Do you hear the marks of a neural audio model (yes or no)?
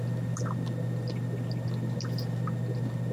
no